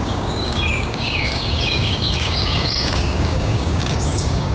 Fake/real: fake